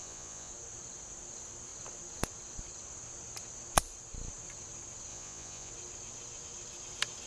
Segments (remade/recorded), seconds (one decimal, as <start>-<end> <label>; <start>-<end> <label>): 0.0-0.5 remade; 0.5-5.1 recorded; 5.1-5.7 remade; 5.7-7.3 recorded